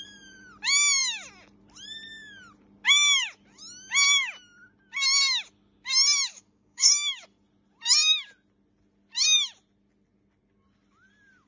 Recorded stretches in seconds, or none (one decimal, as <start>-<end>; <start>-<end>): 0.0-6.3; 6.9-11.5